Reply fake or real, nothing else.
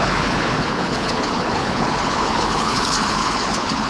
fake